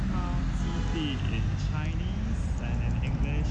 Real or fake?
real